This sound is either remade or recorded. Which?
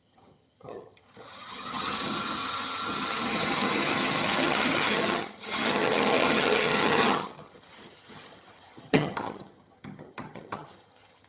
remade